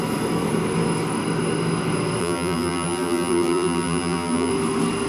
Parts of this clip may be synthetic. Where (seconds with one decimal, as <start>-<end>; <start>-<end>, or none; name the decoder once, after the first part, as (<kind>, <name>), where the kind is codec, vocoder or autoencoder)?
2.2-4.5 (vocoder, BigVGAN v2)

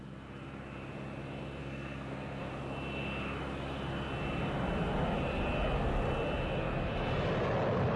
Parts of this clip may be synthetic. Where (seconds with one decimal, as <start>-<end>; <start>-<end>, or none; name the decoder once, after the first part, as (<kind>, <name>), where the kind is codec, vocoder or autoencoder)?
1.6-2.5 (codec, SNAC)

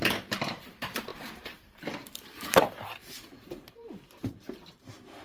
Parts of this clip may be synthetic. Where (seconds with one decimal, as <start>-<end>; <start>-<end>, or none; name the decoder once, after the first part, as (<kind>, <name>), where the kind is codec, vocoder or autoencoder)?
0.0-5.2 (vocoder, BigVGAN v2)